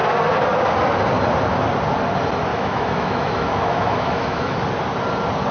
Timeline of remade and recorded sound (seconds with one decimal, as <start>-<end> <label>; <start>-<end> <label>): 0.0-2.5 recorded; 2.5-4.6 remade; 4.6-5.5 recorded